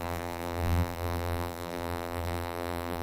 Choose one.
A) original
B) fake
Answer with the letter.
B